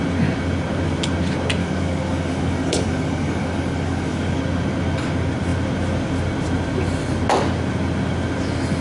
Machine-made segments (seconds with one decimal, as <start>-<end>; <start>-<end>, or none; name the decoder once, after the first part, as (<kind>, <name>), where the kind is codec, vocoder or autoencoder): 1.6-4.4 (codec, DAC)